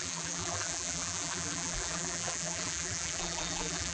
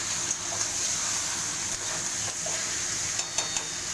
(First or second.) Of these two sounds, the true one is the second